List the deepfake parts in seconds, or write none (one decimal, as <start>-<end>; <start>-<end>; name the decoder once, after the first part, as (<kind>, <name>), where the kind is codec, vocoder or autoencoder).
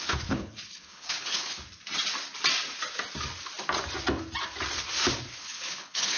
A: 0.0-1.6 (codec, HILCodec); 5.3-6.2